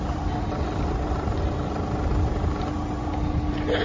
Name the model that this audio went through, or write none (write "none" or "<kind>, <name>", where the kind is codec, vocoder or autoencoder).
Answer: none